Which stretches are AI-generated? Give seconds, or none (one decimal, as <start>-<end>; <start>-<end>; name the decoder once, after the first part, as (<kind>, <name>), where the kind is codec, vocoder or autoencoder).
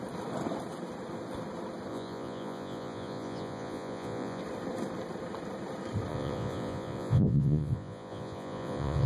1.9-4.4 (vocoder, Vocos); 6.1-9.1